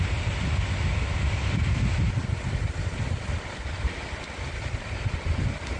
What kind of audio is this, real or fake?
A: real